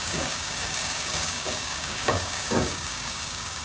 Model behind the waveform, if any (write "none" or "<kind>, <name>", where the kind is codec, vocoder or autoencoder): codec, DAC